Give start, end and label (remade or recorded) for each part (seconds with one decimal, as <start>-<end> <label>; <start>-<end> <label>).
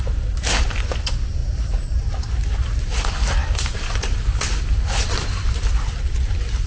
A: 0.0-6.7 recorded